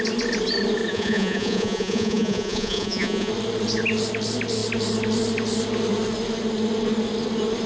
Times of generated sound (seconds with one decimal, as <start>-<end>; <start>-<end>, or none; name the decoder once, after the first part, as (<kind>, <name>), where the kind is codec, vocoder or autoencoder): 0.9-3.3 (vocoder, Vocos)

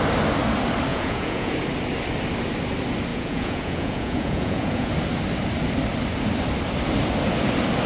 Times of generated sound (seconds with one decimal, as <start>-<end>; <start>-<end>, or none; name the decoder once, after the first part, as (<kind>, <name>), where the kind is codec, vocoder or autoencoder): 0.9-1.5 (vocoder, Vocos); 3.1-4.9

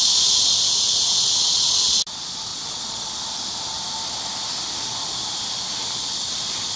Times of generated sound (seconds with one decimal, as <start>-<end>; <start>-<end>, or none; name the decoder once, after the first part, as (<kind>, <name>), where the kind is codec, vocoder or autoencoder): 2.5-3.1 (vocoder, Vocos)

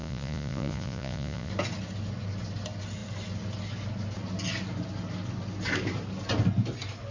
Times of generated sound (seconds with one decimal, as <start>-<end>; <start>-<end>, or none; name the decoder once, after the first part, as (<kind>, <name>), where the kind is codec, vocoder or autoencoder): 0.0-1.5 (vocoder, Vocos)

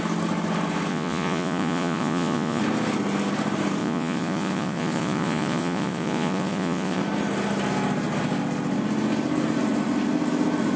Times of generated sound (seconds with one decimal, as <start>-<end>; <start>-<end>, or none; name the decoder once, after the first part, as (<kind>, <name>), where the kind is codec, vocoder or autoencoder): 0.9-2.6 (vocoder, Vocos); 3.8-7.0